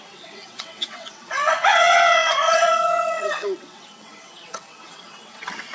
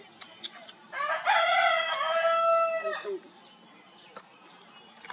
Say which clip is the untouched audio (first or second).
second